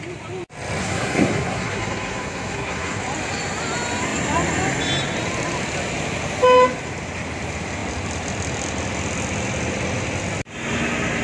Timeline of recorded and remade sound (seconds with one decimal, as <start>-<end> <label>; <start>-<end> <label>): 0.0-0.8 recorded; 0.8-3.0 remade; 3.0-11.2 recorded